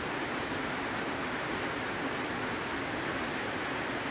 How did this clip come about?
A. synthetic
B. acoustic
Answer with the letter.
B